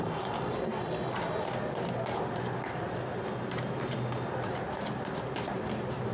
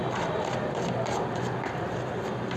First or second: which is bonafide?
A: first